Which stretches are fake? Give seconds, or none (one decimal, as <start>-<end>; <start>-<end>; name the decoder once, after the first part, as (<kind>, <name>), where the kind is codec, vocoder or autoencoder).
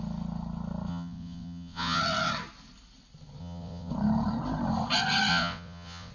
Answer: 0.9-2.0 (vocoder, WaveNeXt); 3.4-3.9; 5.3-6.1